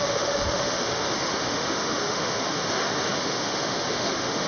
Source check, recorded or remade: remade